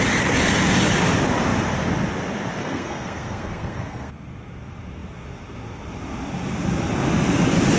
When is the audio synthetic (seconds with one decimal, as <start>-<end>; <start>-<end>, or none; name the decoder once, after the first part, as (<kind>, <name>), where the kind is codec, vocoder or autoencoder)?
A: 2.6-4.1 (codec, SNAC)